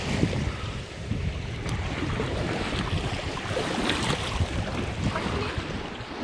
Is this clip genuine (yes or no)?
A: yes